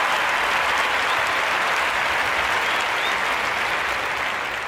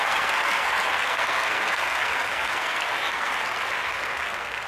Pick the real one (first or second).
first